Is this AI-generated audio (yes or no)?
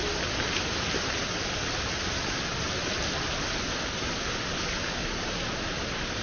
no